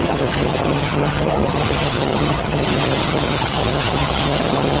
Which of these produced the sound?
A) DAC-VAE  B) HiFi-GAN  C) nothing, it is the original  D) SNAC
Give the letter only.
B